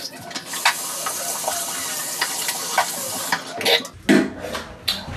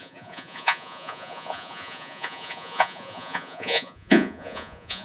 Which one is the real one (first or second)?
first